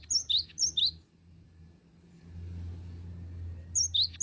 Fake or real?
real